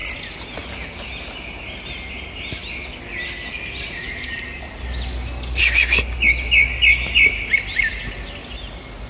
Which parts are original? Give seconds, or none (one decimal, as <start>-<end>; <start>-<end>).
0.0-2.1; 2.6-7.3

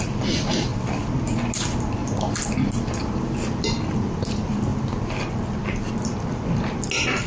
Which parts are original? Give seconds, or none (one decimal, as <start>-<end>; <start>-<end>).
0.0-2.0; 4.1-7.3

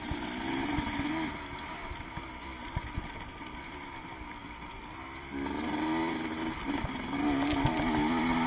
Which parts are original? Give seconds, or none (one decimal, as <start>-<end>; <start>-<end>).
0.0-4.4; 6.1-8.5

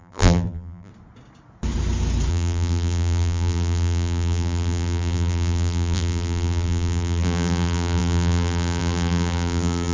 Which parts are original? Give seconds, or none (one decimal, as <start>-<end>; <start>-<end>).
0.9-2.3

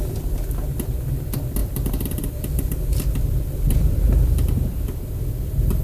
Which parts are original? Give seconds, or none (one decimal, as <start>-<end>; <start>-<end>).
0.0-1.6; 5.0-5.8

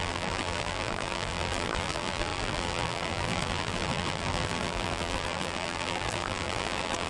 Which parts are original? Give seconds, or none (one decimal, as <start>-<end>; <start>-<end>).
none

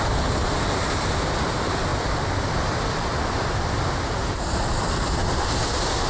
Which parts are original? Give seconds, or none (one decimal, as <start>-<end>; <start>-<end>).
0.0-0.4; 1.1-6.1